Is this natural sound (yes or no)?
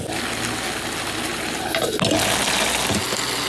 yes